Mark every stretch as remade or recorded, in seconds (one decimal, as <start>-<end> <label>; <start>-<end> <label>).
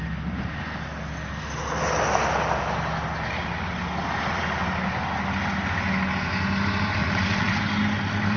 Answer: 0.0-7.0 recorded; 7.0-7.6 remade; 7.6-8.4 recorded